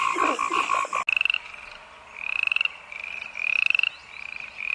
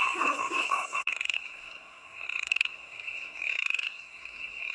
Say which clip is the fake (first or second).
second